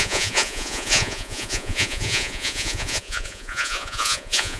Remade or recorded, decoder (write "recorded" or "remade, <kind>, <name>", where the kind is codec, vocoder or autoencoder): remade, vocoder, Vocos